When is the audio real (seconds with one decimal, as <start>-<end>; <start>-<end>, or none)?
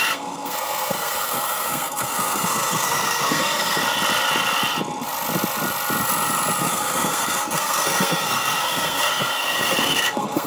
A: 3.8-6.6